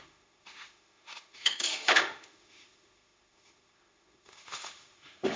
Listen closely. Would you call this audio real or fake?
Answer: fake